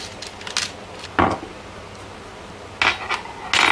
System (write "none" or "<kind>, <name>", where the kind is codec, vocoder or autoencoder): none